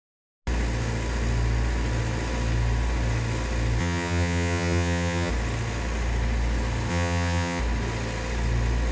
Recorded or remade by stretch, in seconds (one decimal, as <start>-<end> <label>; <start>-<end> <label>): 0.0-3.8 recorded; 3.8-5.3 remade; 5.3-6.9 recorded; 6.9-7.6 remade; 7.6-8.9 recorded